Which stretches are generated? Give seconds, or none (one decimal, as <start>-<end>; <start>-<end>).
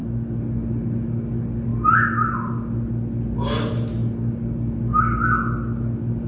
none